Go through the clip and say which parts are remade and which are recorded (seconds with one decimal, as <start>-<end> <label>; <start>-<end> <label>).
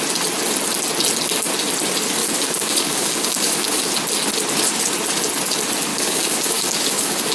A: 0.0-2.2 recorded; 2.2-3.9 remade; 3.9-5.9 recorded; 5.9-7.3 remade